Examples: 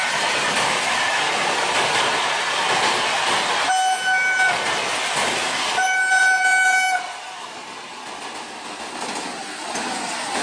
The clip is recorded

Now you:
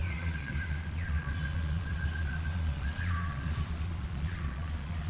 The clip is remade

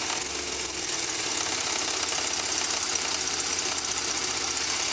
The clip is remade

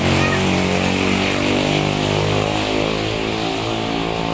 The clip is recorded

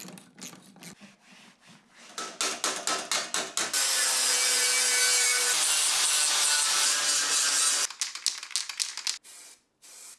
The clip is recorded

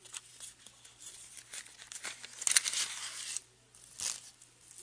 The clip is recorded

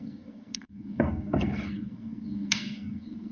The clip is remade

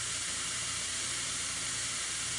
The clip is recorded